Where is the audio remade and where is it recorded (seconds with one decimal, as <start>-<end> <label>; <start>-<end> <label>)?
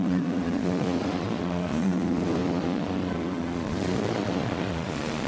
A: 0.0-5.3 remade